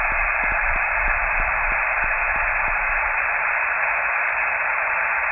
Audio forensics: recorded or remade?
recorded